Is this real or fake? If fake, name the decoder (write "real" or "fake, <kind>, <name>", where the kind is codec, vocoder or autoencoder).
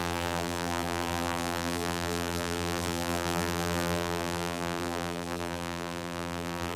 fake, vocoder, BigVGAN v2